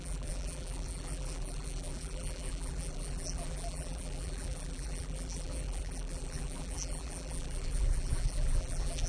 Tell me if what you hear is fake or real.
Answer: fake